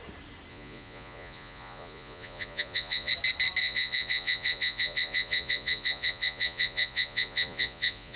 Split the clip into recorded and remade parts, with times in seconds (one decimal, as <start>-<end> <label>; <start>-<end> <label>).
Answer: 0.0-0.5 recorded; 0.5-3.1 remade; 3.1-3.6 recorded; 3.6-8.2 remade